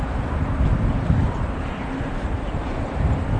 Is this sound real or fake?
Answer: real